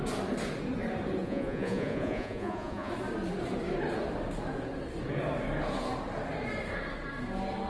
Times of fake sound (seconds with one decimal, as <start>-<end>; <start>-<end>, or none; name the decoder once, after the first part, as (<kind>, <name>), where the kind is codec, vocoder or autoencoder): 1.2-2.9 (vocoder, Vocos)